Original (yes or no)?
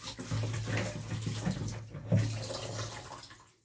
yes